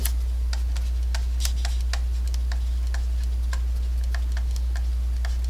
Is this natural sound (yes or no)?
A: yes